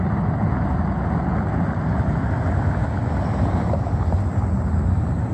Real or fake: real